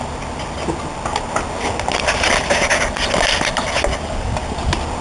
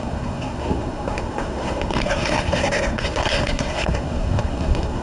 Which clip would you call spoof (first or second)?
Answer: second